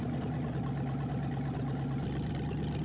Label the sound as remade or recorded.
recorded